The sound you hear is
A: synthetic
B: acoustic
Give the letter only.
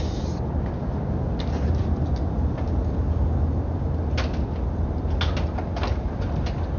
B